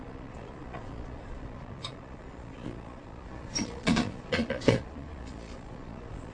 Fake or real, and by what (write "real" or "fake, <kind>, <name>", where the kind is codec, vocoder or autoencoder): fake, vocoder, Vocos